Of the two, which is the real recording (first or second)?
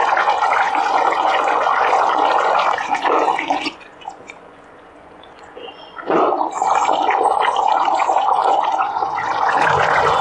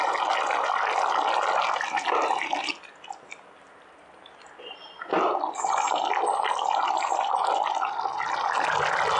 second